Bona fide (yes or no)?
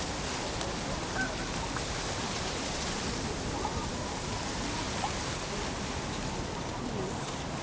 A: yes